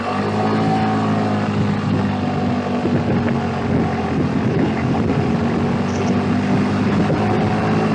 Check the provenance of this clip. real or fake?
real